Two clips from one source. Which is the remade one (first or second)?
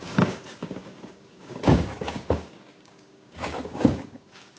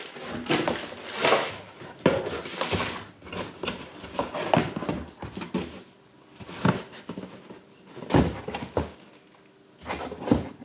first